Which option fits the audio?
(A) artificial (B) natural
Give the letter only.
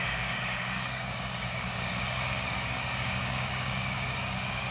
A